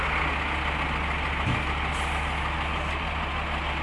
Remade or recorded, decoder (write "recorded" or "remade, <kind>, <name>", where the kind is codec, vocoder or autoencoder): recorded